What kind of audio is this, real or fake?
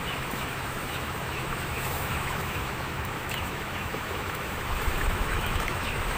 fake